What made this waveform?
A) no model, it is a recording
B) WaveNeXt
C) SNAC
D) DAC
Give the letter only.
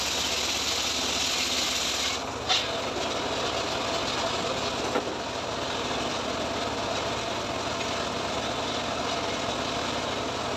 A